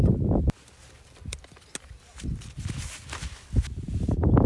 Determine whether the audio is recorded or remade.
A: recorded